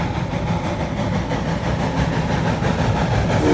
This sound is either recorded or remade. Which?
recorded